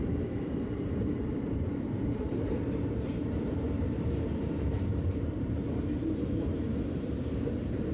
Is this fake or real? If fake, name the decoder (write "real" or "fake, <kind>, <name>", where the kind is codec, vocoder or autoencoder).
fake, vocoder, BigVGAN v2